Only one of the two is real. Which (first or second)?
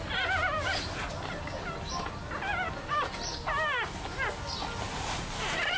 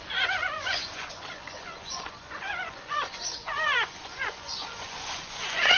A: first